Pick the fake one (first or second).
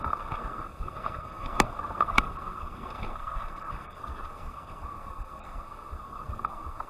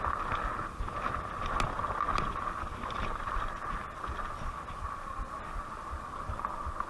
first